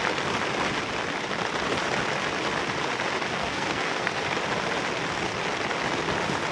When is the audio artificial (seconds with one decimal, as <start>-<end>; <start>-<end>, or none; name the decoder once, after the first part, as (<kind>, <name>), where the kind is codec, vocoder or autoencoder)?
3.3-4.2 (codec, SNAC)